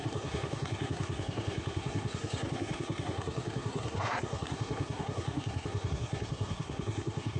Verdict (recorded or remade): remade